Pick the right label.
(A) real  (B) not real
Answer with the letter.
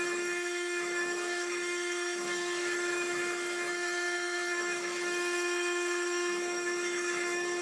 B